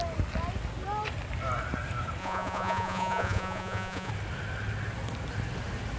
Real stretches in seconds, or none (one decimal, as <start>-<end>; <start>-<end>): 0.0-2.2; 4.1-6.0